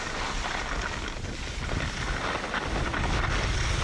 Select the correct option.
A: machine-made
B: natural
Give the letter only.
B